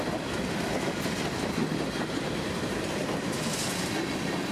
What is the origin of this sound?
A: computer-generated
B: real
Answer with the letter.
B